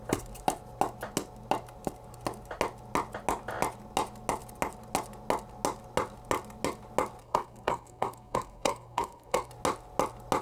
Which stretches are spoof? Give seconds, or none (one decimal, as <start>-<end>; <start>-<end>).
7.2-9.5